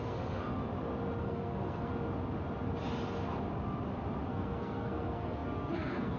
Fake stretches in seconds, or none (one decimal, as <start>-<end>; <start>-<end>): 0.0-0.6; 1.2-1.9; 4.3-6.2

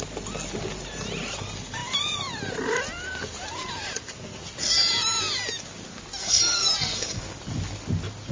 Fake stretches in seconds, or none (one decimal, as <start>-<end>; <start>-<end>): 6.2-7.2

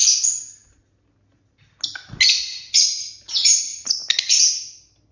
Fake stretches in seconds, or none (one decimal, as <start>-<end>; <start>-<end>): none

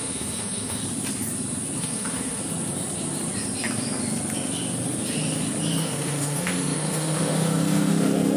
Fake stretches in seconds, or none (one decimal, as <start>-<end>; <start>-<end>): 0.0-0.8; 1.8-2.4; 5.8-8.4

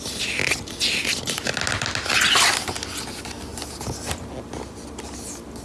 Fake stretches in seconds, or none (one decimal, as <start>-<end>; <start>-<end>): none

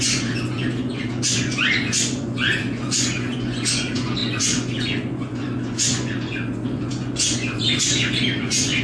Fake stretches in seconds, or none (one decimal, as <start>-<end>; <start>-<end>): 0.0-8.8